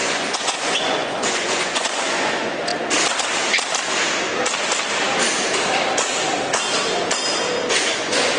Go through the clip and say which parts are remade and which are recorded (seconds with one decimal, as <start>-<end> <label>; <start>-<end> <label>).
0.0-2.7 remade; 2.7-7.7 recorded; 7.7-8.4 remade